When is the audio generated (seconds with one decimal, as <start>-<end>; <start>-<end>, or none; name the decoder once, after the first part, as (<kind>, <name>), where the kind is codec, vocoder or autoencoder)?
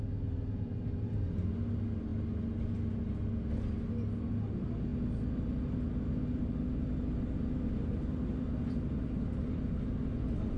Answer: none